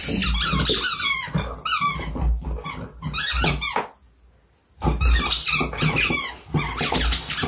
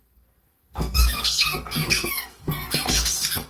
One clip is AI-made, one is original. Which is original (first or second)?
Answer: first